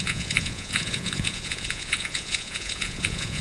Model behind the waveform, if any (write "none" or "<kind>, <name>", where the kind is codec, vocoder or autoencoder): vocoder, Vocos